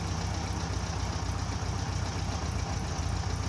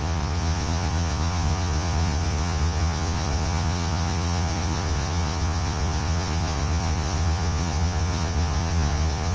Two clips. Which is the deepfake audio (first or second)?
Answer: second